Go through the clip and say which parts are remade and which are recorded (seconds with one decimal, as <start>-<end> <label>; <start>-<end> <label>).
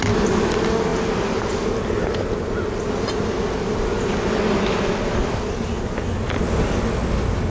0.0-7.5 recorded